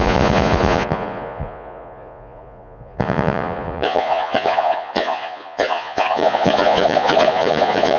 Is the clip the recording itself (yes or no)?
no